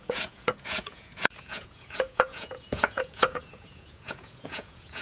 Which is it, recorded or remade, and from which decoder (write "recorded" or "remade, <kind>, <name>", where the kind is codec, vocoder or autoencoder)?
remade, vocoder, Vocos